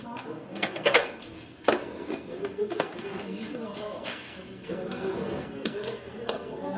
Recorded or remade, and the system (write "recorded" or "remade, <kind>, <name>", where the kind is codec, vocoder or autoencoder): remade, codec, SNAC